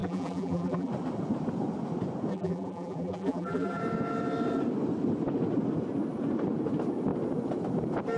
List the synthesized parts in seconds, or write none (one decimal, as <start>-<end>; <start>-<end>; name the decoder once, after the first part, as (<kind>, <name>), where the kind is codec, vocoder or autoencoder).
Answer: 0.0-0.9 (vocoder, BigVGAN v2); 2.3-3.8